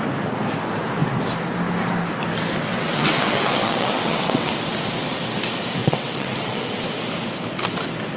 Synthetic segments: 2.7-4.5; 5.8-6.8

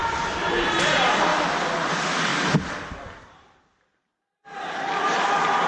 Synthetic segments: 0.0-1.3; 1.9-2.3; 3.2-5.7

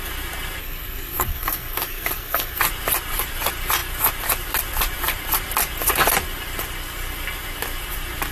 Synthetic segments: 0.6-2.6

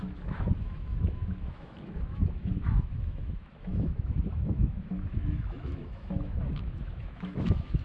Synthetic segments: 0.0-7.8

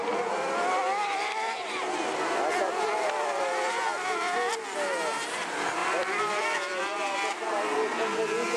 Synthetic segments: 0.0-3.8; 5.8-7.5

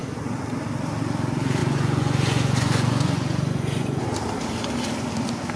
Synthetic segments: 1.6-4.0

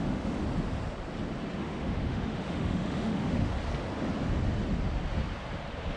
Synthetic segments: 0.0-0.4; 1.6-3.5